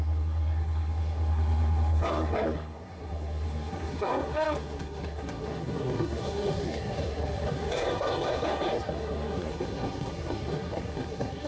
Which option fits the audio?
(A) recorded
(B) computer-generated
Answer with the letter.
B